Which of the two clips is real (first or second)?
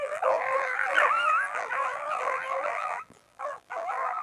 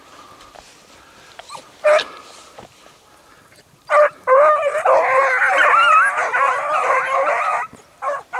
second